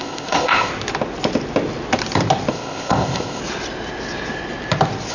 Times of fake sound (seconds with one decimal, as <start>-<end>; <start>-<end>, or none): 0.0-0.7; 2.5-3.4